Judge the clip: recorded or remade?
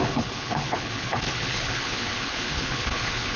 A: remade